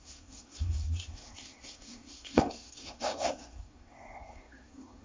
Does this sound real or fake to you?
fake